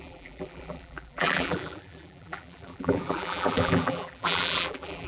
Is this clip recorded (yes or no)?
no